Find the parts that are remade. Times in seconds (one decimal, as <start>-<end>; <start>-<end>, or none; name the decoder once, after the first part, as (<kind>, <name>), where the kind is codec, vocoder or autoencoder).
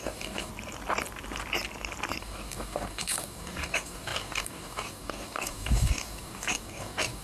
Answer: 0.0-0.5 (codec, DAC); 2.2-7.2